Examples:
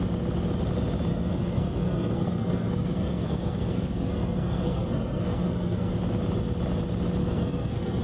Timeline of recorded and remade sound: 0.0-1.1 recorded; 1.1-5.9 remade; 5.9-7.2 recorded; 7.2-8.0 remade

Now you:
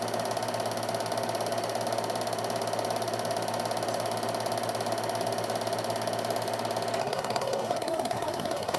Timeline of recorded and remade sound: 0.0-7.0 recorded; 7.0-8.8 remade

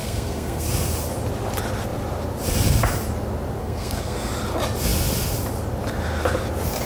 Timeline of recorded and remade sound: 0.0-0.7 remade; 0.7-3.6 recorded; 3.6-4.3 remade; 4.3-6.9 recorded

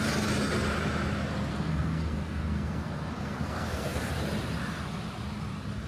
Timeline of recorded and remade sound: 0.0-1.5 recorded; 1.5-4.1 remade; 4.1-5.9 recorded